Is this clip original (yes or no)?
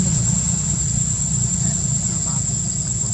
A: yes